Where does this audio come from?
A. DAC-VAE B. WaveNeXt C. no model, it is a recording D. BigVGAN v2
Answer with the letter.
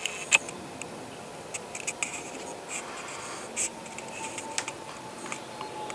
C